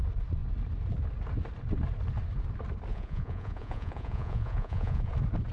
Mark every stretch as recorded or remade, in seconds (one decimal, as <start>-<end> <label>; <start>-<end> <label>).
0.0-2.9 recorded; 2.9-5.1 remade; 5.1-5.5 recorded